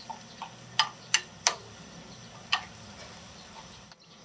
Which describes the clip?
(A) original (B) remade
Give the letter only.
A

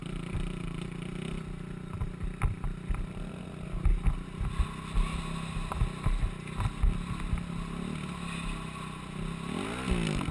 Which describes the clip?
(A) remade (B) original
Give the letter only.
B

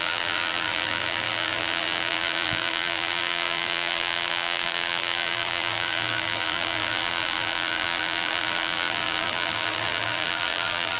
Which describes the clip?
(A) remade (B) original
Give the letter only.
A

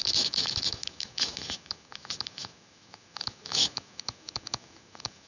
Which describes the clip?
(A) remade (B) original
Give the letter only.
A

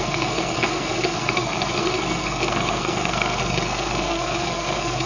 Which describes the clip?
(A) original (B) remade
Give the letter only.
B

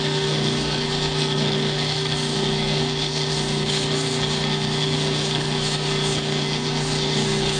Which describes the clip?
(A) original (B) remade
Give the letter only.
B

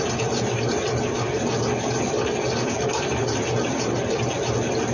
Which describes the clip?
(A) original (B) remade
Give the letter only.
A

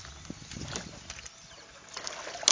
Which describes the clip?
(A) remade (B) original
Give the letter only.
B